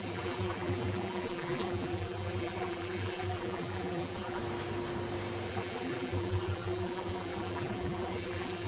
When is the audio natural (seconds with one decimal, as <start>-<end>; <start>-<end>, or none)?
4.4-5.5